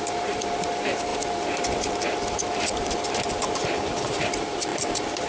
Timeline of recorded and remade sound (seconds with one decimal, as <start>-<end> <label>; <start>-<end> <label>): 0.0-5.3 remade